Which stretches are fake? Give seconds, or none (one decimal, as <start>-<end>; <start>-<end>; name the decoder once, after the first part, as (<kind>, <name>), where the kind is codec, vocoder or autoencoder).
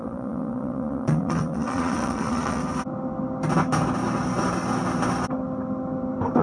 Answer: 0.0-2.6 (vocoder, Vocos)